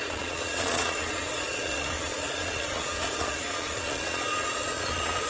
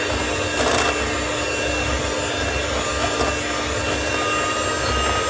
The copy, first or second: first